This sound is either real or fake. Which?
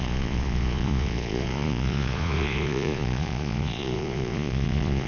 fake